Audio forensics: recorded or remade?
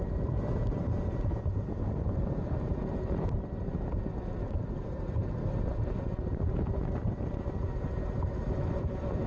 remade